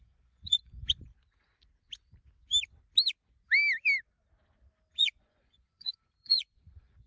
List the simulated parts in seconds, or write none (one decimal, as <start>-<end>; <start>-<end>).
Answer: 0.0-1.1; 4.9-7.1